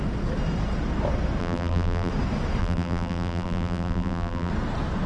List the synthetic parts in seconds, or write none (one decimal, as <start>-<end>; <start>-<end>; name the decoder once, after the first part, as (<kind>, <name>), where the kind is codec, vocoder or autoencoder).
1.4-2.1 (vocoder, BigVGAN v2); 2.6-4.5